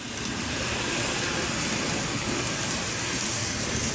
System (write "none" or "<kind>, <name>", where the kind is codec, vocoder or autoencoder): none